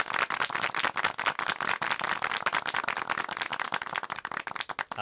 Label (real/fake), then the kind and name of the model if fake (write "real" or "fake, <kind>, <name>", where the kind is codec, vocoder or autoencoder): real